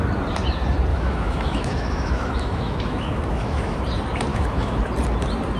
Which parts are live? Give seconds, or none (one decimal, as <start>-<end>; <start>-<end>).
0.0-0.9; 3.8-4.3; 4.8-5.6